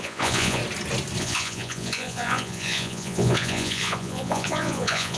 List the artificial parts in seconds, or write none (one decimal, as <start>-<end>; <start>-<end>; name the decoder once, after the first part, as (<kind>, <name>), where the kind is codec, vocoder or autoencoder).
0.0-0.6 (vocoder, Vocos); 1.2-5.2